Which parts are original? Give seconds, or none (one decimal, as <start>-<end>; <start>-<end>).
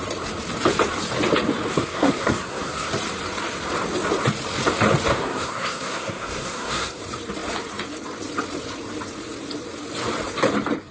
0.0-1.7; 2.9-5.1; 7.0-10.9